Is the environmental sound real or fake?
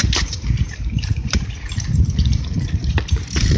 fake